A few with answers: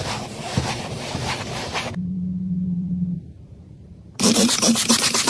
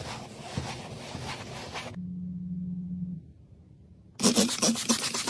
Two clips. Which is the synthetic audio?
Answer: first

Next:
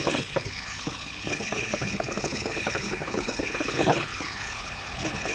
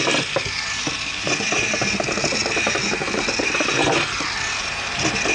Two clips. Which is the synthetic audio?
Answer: first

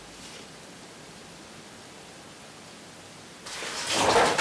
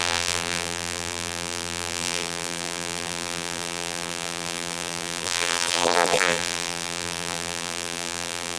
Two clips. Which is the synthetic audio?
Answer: second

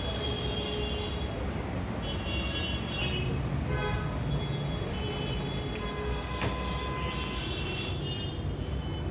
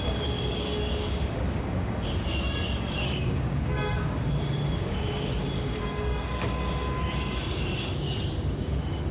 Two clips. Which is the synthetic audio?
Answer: second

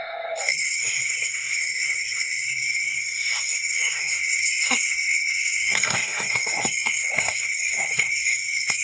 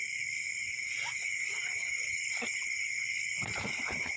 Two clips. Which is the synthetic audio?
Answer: first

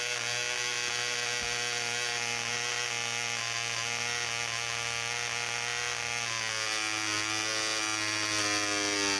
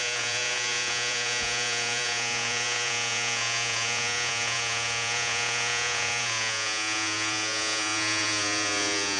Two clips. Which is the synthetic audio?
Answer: second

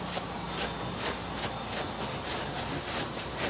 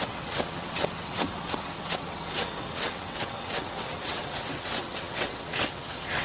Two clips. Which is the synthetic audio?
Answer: second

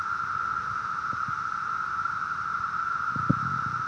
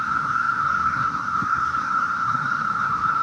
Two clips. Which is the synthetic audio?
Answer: second